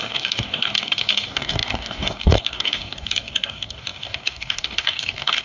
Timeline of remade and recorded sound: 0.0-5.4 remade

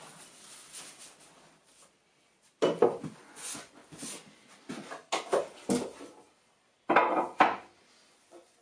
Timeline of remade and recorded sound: 0.0-3.2 recorded; 3.2-3.8 remade; 3.8-8.1 recorded; 8.1-8.6 remade

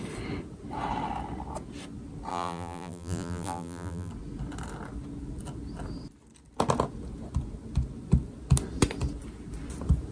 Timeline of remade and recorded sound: 0.0-2.3 recorded; 2.3-4.1 remade; 4.1-10.1 recorded

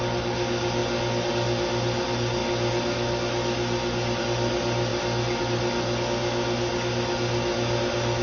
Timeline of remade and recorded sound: 0.0-8.2 recorded

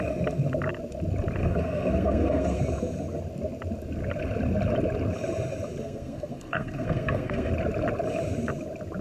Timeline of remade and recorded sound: 0.0-1.4 recorded; 1.4-2.6 remade; 2.6-5.8 recorded; 5.8-7.5 remade; 7.5-9.0 recorded